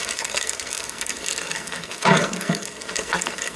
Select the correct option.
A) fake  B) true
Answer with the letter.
A